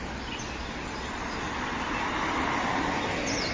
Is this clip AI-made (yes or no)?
no